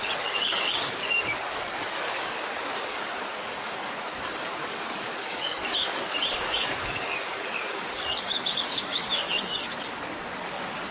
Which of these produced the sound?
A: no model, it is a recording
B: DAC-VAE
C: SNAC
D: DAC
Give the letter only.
D